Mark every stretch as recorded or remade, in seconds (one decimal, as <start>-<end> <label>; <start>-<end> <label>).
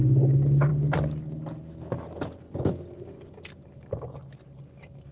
0.0-5.1 recorded